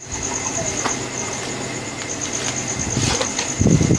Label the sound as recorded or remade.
recorded